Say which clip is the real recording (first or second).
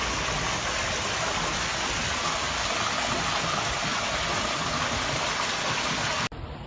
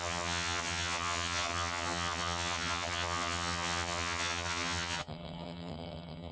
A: first